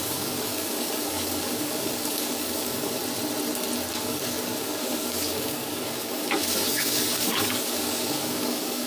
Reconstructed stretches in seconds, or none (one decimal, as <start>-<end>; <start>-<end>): 0.0-3.0; 3.9-8.9

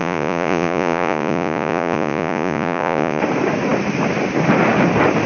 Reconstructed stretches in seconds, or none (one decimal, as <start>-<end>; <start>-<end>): 0.0-3.2

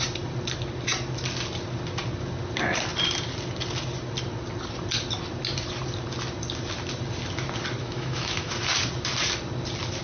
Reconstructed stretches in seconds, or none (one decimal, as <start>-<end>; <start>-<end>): 7.8-8.5

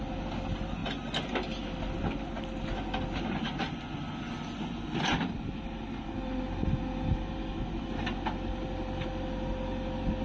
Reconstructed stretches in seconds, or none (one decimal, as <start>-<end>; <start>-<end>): none